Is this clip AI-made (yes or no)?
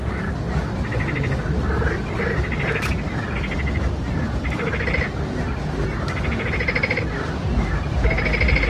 no